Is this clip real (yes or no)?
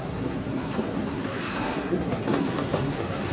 no